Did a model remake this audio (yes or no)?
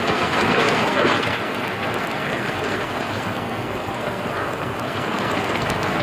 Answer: yes